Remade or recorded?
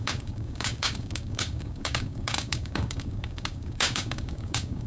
remade